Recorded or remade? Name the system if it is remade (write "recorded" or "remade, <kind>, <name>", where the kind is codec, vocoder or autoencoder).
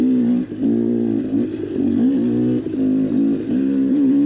recorded